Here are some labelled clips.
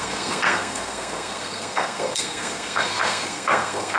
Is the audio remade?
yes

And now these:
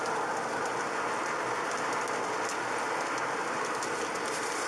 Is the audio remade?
no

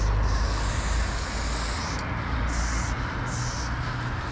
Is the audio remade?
no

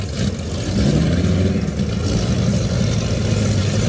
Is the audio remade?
no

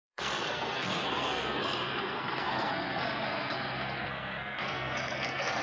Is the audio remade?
yes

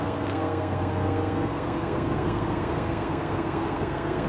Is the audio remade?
yes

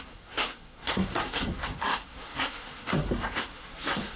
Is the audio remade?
yes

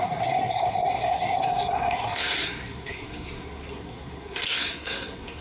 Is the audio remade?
yes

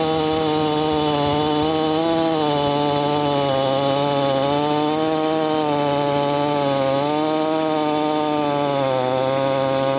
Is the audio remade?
no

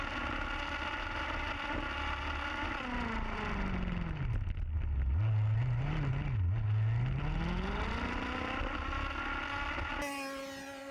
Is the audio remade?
no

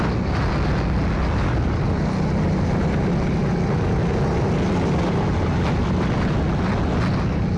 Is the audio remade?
no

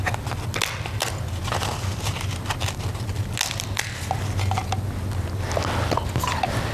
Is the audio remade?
no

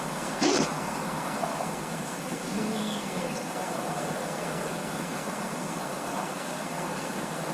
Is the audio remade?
yes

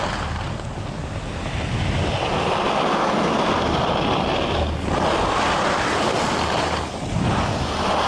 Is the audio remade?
no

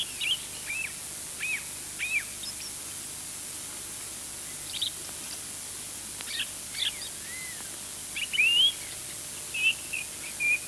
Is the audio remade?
no